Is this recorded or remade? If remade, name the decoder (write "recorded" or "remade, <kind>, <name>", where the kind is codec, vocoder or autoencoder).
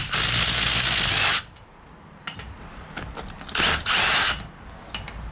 recorded